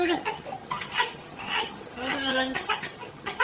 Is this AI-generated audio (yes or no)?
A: yes